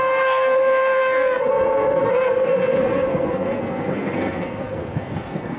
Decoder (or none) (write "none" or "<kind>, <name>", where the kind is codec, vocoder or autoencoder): codec, SNAC